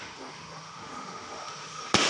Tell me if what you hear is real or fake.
fake